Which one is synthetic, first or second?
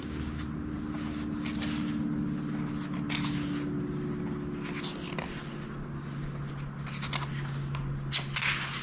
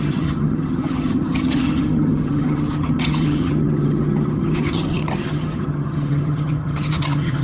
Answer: second